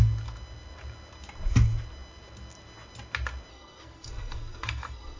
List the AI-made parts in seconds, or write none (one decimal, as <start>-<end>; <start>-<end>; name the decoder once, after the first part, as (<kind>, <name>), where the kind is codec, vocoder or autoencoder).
3.5-5.2 (codec, SNAC)